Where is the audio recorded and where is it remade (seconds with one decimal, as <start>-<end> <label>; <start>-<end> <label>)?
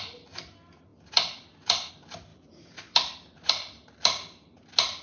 0.0-2.3 recorded; 2.3-3.5 remade; 3.5-5.0 recorded